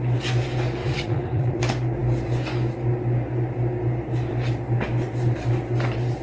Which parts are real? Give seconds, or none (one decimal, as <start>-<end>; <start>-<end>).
0.0-0.8; 1.6-6.2